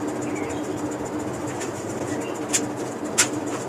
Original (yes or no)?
yes